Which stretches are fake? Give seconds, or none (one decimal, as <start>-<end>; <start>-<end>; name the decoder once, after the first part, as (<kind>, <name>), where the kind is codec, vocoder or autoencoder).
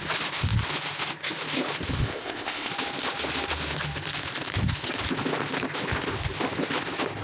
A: 2.0-2.7 (codec, ZipCodec)